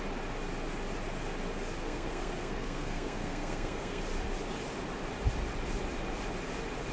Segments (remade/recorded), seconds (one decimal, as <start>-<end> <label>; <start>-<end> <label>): 0.0-1.8 recorded; 1.8-4.0 remade; 4.0-6.9 recorded